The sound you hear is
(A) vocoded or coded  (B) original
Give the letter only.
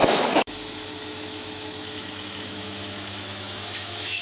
A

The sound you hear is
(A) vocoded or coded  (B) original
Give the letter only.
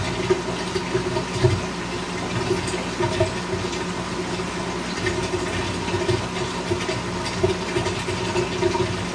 B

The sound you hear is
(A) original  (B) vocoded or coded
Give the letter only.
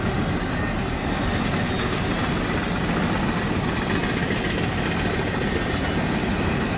A